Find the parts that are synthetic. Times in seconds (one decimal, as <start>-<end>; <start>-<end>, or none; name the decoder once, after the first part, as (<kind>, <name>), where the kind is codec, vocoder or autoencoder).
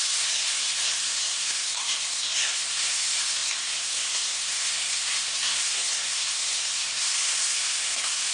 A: 0.0-8.3 (codec, SNAC)